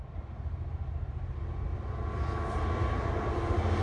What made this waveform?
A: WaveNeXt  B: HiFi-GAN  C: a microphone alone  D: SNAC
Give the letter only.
C